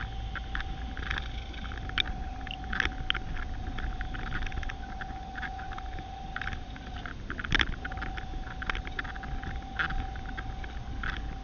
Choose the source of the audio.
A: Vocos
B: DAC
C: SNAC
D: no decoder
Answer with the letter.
D